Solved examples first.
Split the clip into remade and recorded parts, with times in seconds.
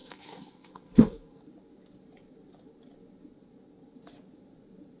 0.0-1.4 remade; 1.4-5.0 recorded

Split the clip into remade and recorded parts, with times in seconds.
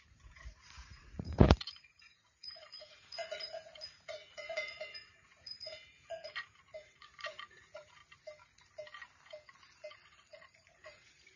0.0-8.0 remade; 8.0-9.9 recorded; 9.9-11.4 remade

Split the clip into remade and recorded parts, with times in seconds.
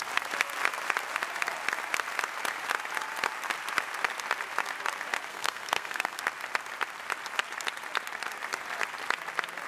0.0-5.3 recorded; 5.3-6.2 remade; 6.2-9.7 recorded